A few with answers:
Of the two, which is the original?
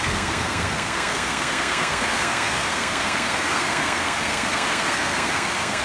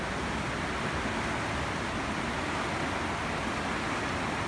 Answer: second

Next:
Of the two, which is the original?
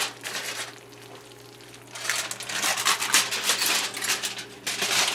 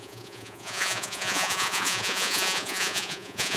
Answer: first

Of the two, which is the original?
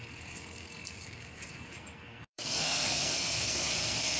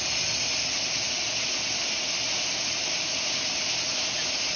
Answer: second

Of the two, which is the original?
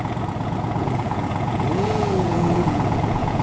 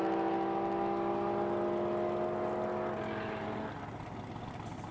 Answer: second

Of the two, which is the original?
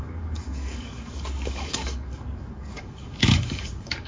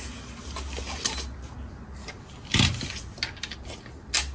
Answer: second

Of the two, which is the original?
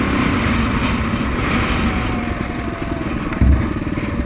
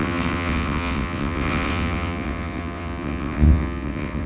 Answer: first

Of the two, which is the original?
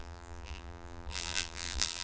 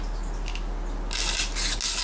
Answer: second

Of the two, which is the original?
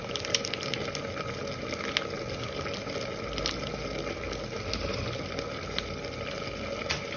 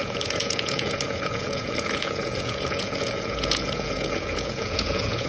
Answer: first